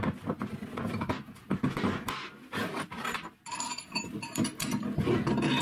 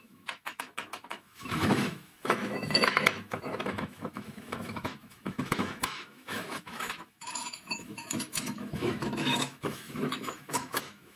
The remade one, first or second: second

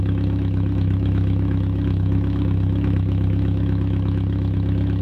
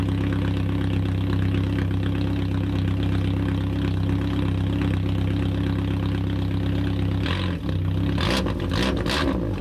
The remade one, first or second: first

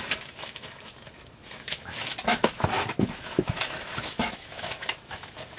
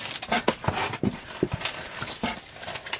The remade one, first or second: first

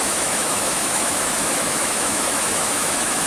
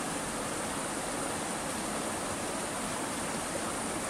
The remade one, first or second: first